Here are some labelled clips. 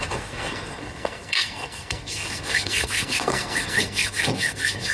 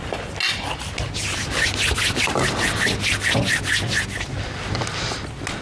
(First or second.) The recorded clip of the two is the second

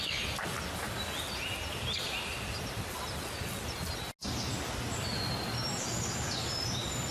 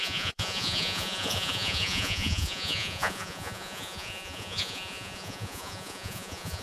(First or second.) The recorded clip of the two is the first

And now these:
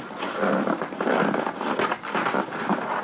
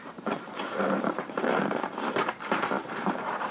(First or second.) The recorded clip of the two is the first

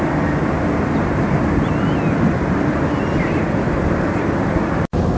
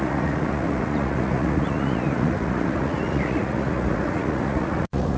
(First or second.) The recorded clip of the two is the first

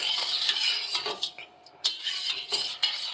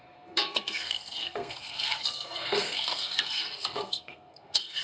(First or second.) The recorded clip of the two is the first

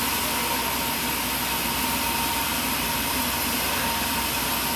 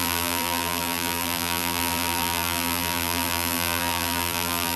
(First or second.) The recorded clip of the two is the first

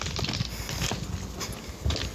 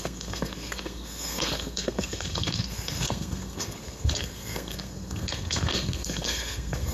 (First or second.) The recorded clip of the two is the first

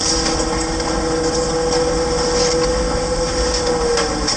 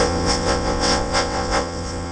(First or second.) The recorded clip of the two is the first